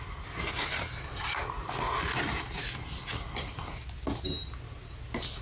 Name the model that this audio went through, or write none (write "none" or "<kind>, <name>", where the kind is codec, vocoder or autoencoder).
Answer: none